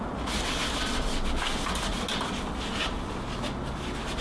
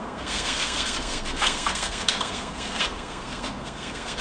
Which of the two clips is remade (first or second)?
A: second